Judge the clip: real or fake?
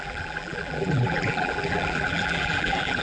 fake